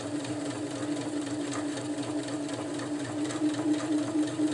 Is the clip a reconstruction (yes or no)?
no